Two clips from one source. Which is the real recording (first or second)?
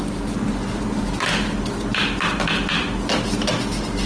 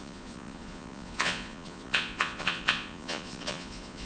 first